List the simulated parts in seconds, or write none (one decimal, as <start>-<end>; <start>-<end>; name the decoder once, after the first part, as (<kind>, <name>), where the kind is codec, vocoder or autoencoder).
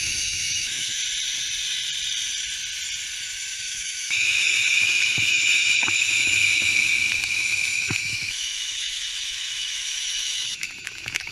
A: 0.0-1.0 (autoencoder, DAC-VAE); 3.2-11.3